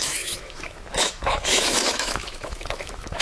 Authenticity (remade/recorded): remade